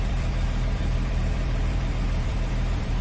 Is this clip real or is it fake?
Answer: fake